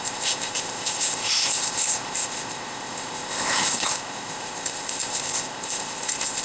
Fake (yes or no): yes